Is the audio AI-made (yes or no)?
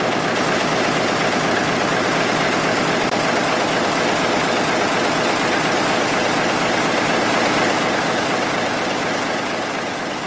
no